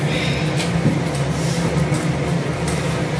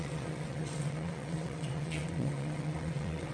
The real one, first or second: first